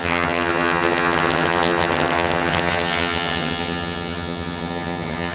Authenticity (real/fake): fake